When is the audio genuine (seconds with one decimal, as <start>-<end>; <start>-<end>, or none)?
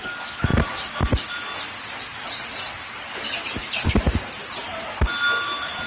0.0-0.5; 1.0-3.6; 4.9-5.9